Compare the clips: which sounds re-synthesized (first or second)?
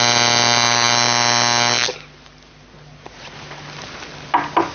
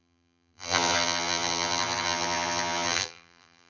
second